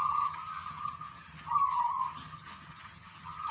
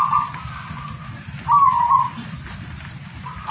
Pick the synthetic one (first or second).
first